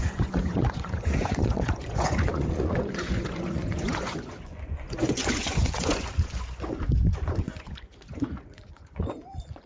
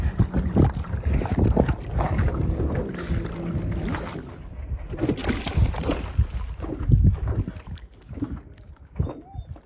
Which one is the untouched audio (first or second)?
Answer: second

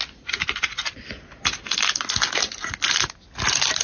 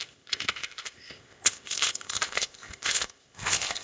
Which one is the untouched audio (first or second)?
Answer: first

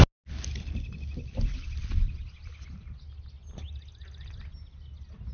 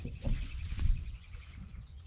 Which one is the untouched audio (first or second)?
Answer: first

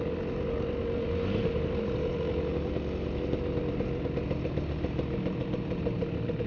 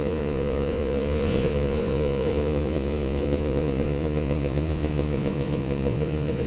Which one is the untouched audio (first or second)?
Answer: first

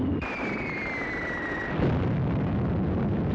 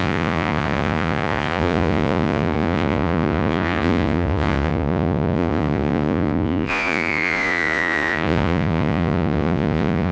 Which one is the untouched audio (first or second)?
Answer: first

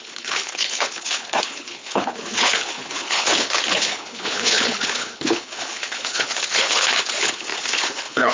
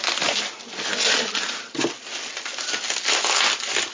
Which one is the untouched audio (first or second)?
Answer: second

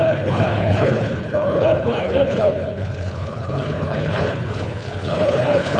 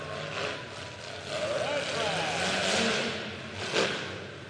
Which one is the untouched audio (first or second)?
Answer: second